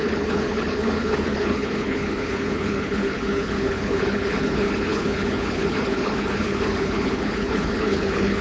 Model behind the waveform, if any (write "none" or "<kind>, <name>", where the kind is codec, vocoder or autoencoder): codec, HILCodec